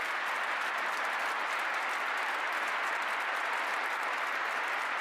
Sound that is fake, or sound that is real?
real